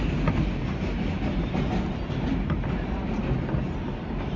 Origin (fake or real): real